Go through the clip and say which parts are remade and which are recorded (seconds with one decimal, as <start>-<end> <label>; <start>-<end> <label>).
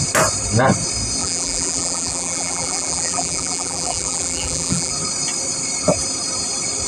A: 0.0-1.2 recorded; 1.2-4.9 remade; 4.9-6.9 recorded